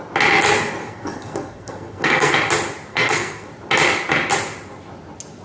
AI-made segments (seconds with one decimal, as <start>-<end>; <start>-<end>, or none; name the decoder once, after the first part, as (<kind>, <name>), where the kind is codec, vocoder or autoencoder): 0.8-2.3 (codec, SNAC); 2.9-3.5